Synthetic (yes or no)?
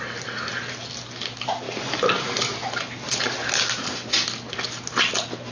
no